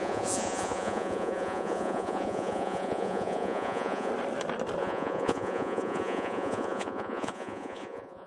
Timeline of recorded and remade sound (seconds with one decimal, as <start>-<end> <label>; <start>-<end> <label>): 0.0-4.1 remade; 4.1-4.8 recorded; 4.8-8.3 remade